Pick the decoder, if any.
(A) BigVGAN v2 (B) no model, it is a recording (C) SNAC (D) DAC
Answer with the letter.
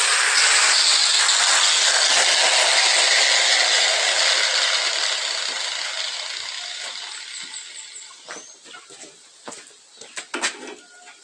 B